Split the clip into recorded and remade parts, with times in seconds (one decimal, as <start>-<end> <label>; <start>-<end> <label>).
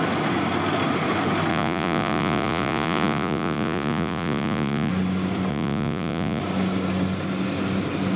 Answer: 0.0-1.5 recorded; 1.5-4.9 remade; 4.9-5.5 recorded; 5.5-6.4 remade; 6.4-8.2 recorded